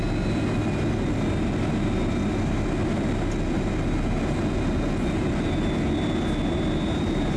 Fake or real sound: real